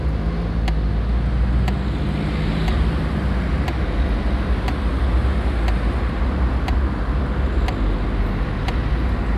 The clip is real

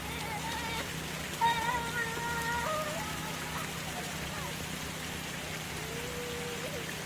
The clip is real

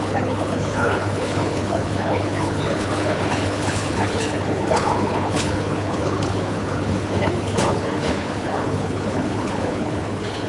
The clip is fake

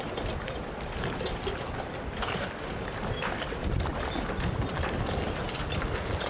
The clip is real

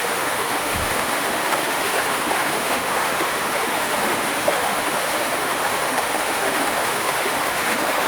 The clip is fake